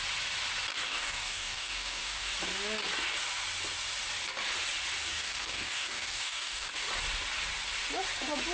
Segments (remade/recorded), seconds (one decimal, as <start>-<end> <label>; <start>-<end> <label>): 0.0-0.7 recorded; 0.7-2.3 remade; 2.3-5.1 recorded; 5.1-6.7 remade; 6.7-8.5 recorded